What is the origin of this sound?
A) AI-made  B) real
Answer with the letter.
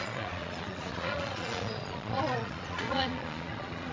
A